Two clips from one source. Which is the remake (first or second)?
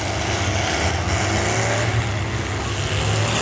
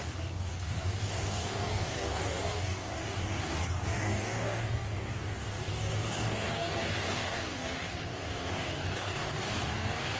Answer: second